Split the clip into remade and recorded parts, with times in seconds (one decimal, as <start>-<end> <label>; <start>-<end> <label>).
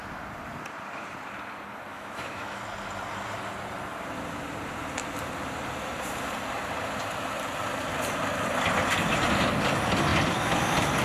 0.0-1.9 recorded; 1.9-2.6 remade; 2.6-11.0 recorded